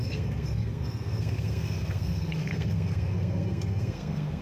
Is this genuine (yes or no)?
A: no